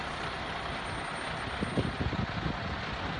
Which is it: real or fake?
real